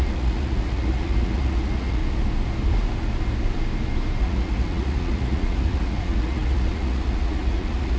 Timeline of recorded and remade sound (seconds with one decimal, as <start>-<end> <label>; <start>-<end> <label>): 0.0-2.0 remade; 2.0-4.2 recorded; 4.2-8.0 remade